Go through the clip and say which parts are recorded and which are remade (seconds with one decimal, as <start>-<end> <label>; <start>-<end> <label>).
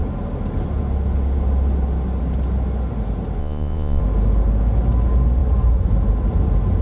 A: 0.0-3.4 recorded; 3.4-4.0 remade; 4.0-6.8 recorded